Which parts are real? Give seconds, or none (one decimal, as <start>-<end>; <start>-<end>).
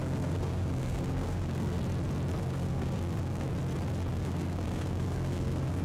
1.8-2.4; 3.5-4.1